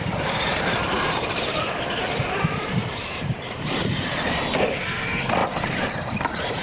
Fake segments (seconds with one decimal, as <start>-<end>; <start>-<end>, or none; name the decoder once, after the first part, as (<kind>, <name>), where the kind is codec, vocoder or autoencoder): 0.0-3.3 (vocoder, BigVGAN v2); 5.4-6.6